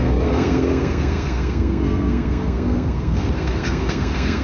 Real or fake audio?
fake